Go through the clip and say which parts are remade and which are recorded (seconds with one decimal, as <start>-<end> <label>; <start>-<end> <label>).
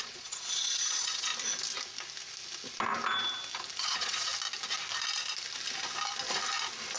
0.0-1.3 remade; 1.3-3.8 recorded; 3.8-4.3 remade; 4.3-7.0 recorded